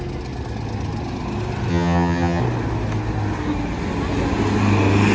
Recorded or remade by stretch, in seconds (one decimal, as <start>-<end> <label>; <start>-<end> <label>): 0.0-1.7 recorded; 1.7-2.4 remade; 2.4-5.1 recorded